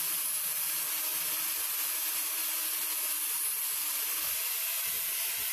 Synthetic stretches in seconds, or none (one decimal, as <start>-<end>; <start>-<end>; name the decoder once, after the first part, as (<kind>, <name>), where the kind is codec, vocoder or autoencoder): none